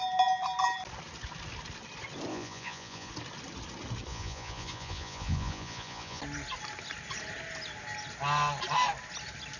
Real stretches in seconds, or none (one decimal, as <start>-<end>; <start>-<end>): 0.0-2.3; 3.1-4.1; 6.2-9.6